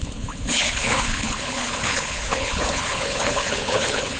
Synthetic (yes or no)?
yes